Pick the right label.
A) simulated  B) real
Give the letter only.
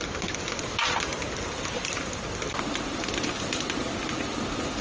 B